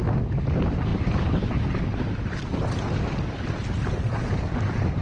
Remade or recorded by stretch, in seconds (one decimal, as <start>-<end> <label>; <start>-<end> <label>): 0.0-5.0 recorded